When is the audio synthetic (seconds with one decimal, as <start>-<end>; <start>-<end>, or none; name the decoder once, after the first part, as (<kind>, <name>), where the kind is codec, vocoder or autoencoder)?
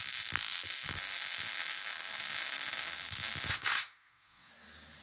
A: 3.5-4.5 (codec, SNAC)